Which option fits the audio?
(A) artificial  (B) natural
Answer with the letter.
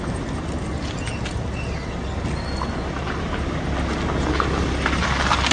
B